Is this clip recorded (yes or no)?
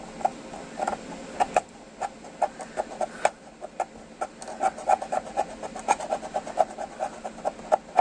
yes